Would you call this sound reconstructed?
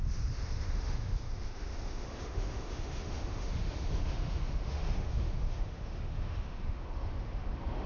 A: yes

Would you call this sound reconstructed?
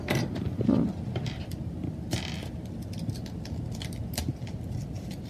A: no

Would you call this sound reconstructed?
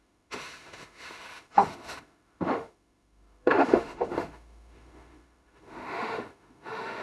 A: yes